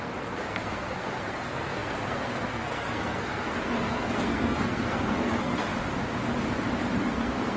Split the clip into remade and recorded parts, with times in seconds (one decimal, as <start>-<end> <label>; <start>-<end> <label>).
0.0-5.7 remade; 5.7-7.0 recorded; 7.0-7.6 remade